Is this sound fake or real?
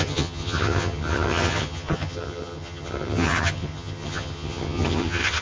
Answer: fake